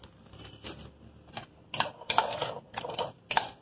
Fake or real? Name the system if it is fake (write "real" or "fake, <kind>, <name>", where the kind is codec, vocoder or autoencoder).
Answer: real